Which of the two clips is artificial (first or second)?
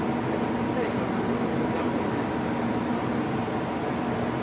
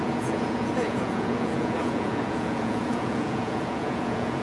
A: second